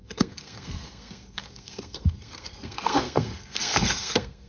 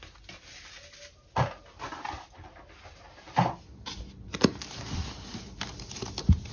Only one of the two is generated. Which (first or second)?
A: first